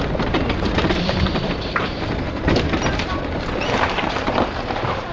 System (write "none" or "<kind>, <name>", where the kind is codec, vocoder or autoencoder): vocoder, BigVGAN v2